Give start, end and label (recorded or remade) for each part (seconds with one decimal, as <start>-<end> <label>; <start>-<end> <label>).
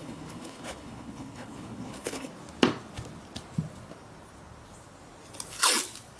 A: 0.0-2.3 remade; 2.3-6.2 recorded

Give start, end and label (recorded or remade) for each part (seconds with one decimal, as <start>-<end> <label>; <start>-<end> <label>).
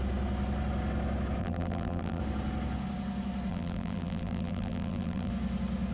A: 0.0-1.4 recorded; 1.4-2.2 remade; 2.2-3.5 recorded; 3.5-5.3 remade; 5.3-5.9 recorded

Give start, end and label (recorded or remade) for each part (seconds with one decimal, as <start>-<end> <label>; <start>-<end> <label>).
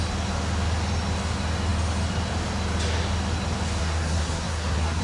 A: 0.0-3.8 recorded; 3.8-5.0 remade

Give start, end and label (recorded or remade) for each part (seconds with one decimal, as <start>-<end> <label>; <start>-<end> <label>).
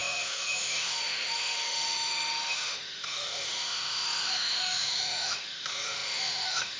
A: 0.0-6.8 remade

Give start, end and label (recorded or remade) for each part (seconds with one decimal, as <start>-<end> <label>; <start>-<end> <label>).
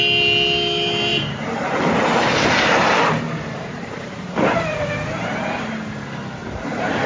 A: 0.0-1.1 recorded; 1.1-5.4 remade; 5.4-6.4 recorded; 6.4-7.1 remade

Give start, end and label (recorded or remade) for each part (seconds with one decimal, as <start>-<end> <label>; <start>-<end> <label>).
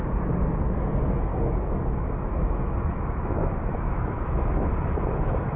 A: 0.0-1.3 recorded; 1.3-4.7 remade; 4.7-5.6 recorded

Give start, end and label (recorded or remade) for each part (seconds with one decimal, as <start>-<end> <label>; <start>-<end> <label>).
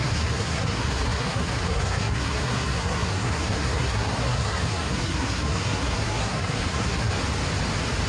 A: 0.0-7.1 remade; 7.1-8.1 recorded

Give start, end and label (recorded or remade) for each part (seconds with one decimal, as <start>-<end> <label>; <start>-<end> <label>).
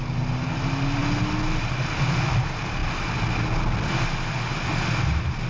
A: 0.0-5.5 recorded